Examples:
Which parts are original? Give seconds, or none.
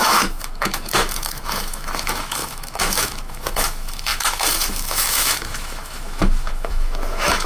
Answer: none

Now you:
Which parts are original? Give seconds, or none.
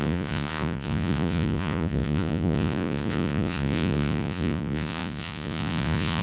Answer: none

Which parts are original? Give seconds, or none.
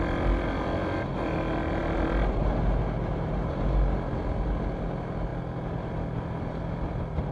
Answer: 0.0-7.3